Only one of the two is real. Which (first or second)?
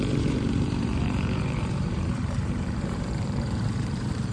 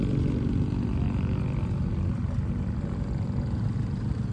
second